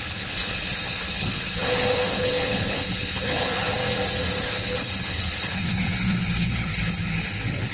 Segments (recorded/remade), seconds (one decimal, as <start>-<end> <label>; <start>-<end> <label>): 0.0-3.8 remade; 3.8-4.4 recorded; 4.4-7.7 remade